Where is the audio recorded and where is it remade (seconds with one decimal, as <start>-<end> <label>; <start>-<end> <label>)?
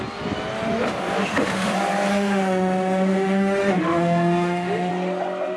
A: 0.0-1.2 recorded; 1.2-1.7 remade; 1.7-2.1 recorded; 2.1-4.9 remade; 4.9-5.6 recorded